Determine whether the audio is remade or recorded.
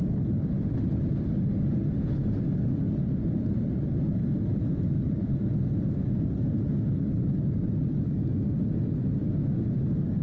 recorded